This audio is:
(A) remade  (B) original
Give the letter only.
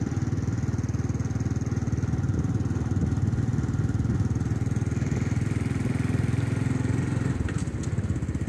B